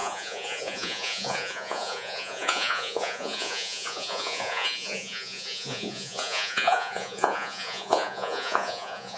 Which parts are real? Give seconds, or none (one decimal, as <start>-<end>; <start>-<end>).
none